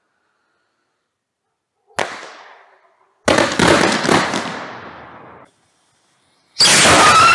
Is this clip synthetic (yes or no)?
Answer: no